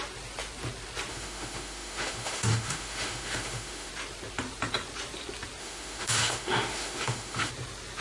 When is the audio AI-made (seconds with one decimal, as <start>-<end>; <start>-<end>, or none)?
1.1-3.9; 5.6-7.5